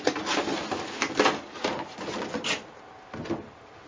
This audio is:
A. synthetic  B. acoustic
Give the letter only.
B